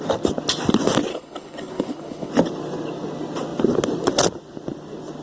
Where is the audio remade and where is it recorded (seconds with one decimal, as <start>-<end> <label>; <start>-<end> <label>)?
0.0-1.1 recorded; 1.1-2.3 remade; 2.3-5.2 recorded